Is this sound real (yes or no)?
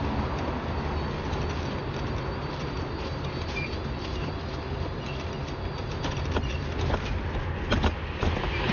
yes